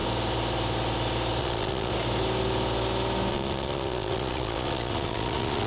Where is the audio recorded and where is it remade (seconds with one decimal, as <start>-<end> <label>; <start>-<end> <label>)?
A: 0.0-1.4 recorded; 1.4-1.9 remade; 1.9-3.3 recorded; 3.3-5.7 remade